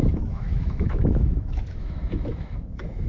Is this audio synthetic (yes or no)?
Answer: yes